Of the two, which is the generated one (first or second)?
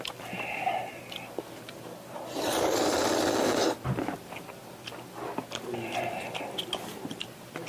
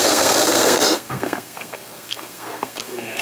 second